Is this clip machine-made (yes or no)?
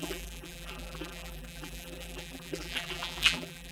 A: yes